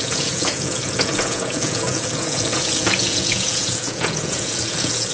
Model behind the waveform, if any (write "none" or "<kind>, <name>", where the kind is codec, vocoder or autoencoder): vocoder, Vocos